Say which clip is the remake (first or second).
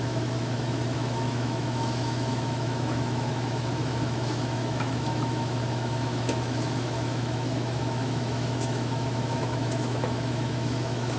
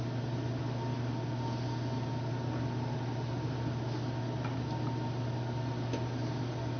first